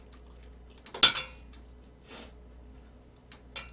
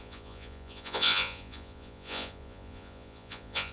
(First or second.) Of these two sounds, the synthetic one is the second